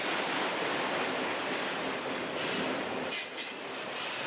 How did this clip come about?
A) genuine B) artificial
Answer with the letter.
A